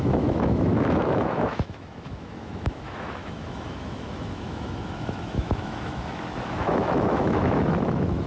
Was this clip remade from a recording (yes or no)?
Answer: yes